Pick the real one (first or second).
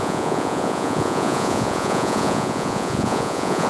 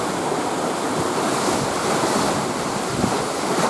second